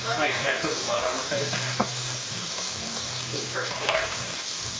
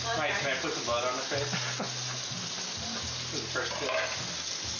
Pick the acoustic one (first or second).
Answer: second